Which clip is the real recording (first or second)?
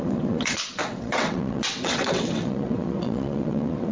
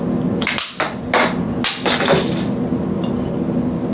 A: second